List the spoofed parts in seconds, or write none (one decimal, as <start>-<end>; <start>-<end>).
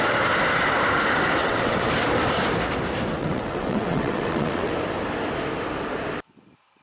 1.4-1.9; 3.2-4.7